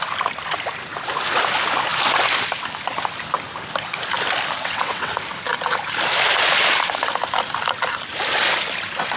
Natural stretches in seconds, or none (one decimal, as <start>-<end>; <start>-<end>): 0.0-4.6; 5.1-9.2